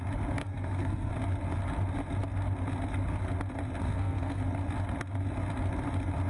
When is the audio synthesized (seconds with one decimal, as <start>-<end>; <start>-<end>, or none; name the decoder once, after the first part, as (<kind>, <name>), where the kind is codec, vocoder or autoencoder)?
0.4-1.1 (codec, SNAC); 3.8-4.4